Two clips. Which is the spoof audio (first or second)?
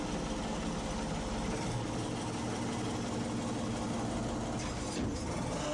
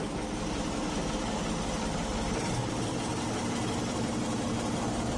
second